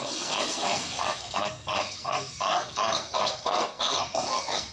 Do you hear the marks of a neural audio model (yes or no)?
yes